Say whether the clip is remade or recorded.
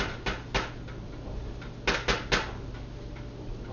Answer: recorded